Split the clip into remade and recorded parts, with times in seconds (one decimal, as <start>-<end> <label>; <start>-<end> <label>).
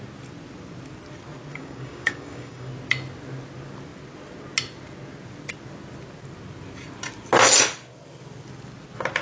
0.0-1.5 recorded; 1.5-2.7 remade; 2.7-9.2 recorded